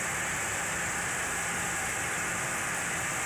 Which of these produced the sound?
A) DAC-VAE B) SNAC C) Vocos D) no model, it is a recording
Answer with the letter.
D